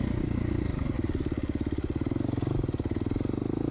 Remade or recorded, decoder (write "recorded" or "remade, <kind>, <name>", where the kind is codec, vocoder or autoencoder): recorded